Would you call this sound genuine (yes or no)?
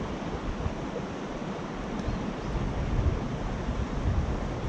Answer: yes